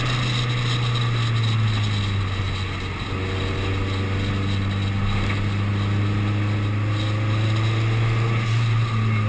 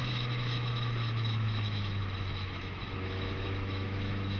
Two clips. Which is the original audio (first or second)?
first